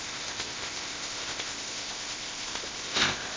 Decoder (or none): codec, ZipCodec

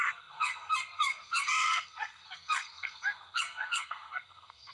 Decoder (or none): codec, SNAC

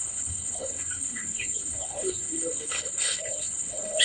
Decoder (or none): codec, HILCodec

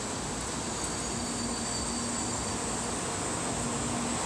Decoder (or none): none